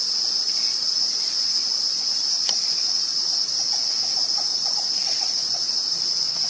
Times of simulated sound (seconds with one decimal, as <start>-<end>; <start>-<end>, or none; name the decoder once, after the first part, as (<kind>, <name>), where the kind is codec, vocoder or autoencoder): 0.8-3.7 (vocoder, Vocos); 4.5-6.5